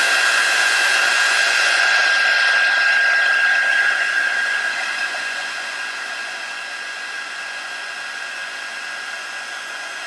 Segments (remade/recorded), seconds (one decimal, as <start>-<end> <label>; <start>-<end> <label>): 0.0-2.0 remade; 2.0-3.7 recorded; 3.7-10.1 remade